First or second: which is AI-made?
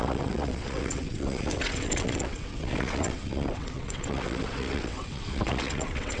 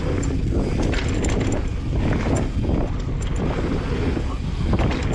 first